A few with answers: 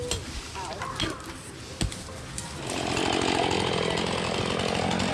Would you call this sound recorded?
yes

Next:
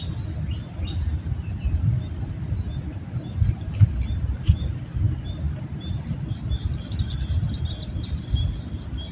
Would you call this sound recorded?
yes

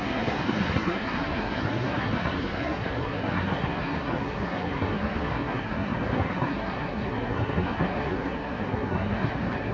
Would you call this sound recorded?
no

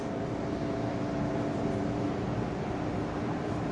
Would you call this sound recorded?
yes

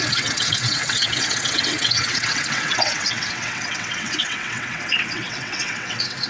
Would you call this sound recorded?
no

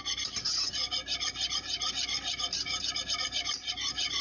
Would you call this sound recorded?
yes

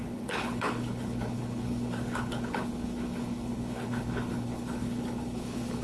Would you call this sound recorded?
no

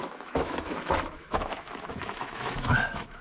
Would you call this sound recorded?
no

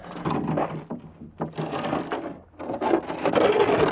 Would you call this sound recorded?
yes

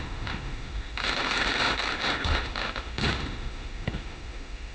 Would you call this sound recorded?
no